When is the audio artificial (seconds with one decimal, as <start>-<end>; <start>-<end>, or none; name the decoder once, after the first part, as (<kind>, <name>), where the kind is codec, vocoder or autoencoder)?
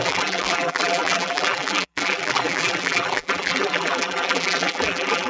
0.0-5.3 (vocoder, BigVGAN v2)